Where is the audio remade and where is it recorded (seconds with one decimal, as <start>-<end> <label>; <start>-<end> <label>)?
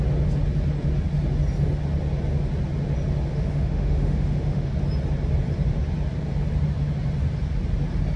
0.0-3.3 recorded; 3.3-4.7 remade; 4.7-8.2 recorded